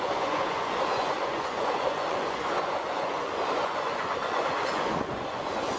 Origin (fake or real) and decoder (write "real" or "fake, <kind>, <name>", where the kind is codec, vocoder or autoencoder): fake, vocoder, Vocos